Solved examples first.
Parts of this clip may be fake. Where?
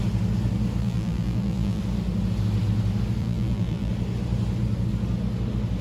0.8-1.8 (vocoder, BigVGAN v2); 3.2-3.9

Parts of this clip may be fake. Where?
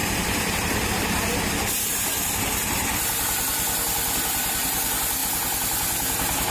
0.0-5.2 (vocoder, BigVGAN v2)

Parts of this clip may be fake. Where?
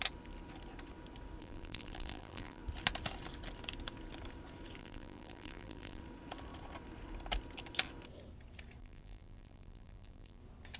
1.4-2.6 (vocoder, BigVGAN v2); 4.8-6.0; 8.8-10.4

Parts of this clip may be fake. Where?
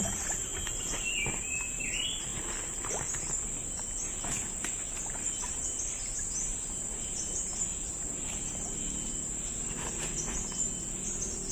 0.0-2.3 (vocoder, BigVGAN v2); 5.3-11.5